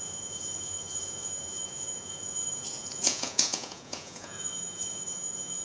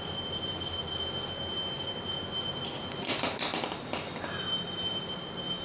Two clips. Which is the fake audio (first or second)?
first